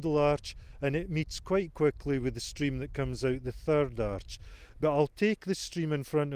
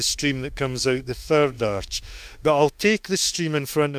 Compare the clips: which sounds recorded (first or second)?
first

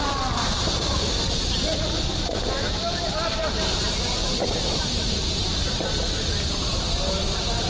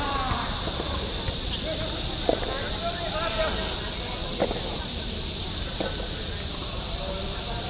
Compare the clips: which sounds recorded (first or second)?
second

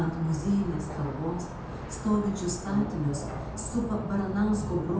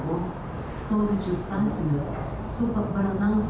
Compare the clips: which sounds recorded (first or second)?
first